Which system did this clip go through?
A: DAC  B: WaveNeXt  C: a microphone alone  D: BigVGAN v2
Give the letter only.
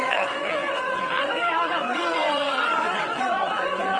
B